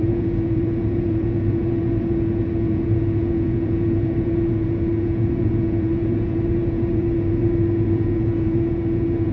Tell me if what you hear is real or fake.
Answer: fake